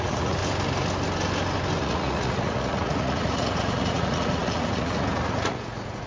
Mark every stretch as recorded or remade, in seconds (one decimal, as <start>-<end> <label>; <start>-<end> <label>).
0.0-0.4 remade; 0.4-1.8 recorded; 1.8-6.1 remade